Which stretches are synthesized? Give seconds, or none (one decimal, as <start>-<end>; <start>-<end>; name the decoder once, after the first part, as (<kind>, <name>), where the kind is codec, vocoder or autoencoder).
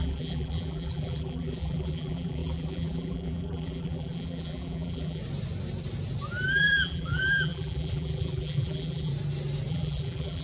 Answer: 0.0-5.2 (vocoder, BigVGAN v2); 6.5-9.1; 9.7-10.4